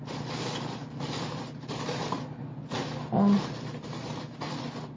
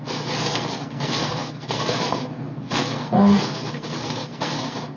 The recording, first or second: first